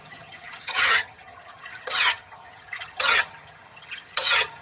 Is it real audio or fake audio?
fake